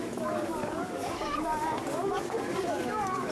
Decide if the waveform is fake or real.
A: fake